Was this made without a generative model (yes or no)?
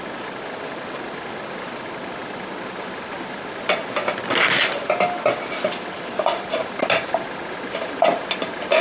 yes